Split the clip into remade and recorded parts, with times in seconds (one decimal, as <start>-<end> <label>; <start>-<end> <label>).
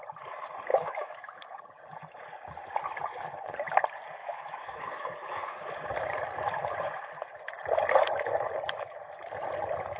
0.0-0.7 recorded; 0.7-1.6 remade; 1.6-4.2 recorded; 4.2-5.7 remade; 5.7-10.0 recorded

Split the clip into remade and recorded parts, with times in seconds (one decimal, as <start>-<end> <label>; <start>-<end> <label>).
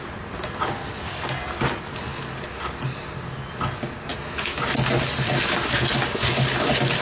0.0-4.1 recorded; 4.1-4.6 remade; 4.6-7.0 recorded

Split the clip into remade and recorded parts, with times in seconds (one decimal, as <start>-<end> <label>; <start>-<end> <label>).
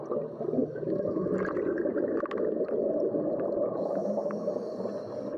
0.0-0.6 recorded; 0.6-1.3 remade; 1.3-4.0 recorded; 4.0-4.5 remade; 4.5-5.4 recorded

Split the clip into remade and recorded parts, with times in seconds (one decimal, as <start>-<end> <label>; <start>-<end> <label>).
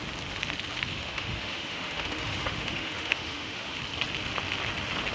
0.0-0.9 recorded; 0.9-3.8 remade; 3.8-5.1 recorded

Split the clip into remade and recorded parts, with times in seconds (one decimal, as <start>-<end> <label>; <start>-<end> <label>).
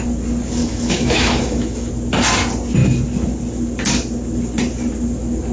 0.0-0.6 recorded; 0.6-1.9 remade; 1.9-5.5 recorded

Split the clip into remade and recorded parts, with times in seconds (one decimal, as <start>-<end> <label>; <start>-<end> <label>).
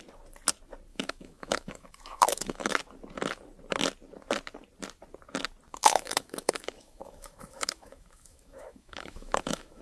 0.0-0.9 recorded; 0.9-2.8 remade; 2.8-5.7 recorded; 5.7-9.8 remade